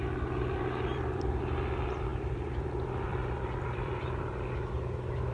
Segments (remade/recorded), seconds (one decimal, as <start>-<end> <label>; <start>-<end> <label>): 0.0-0.9 recorded; 0.9-1.4 remade; 1.4-2.1 recorded; 2.1-2.7 remade; 2.7-3.1 recorded; 3.1-4.2 remade; 4.2-5.3 recorded